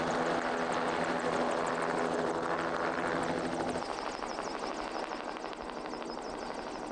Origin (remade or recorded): recorded